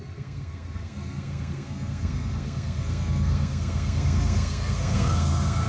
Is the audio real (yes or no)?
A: no